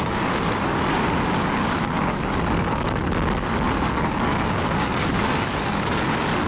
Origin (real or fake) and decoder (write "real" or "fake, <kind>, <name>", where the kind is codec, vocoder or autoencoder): fake, codec, DAC